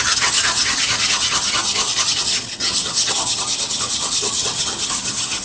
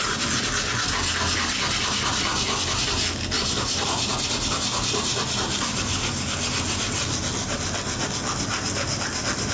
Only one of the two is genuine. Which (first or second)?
second